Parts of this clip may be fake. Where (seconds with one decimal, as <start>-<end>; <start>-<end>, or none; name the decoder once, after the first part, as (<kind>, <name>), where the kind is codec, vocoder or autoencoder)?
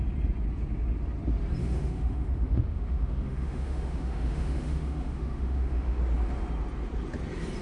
1.6-6.0 (autoencoder, DAC-VAE)